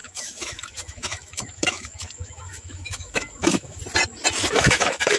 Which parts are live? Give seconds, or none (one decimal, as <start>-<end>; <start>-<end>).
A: 3.8-4.5